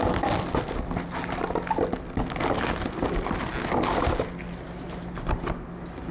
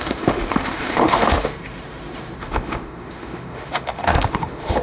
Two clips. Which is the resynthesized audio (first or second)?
second